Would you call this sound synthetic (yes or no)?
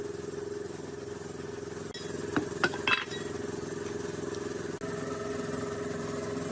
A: no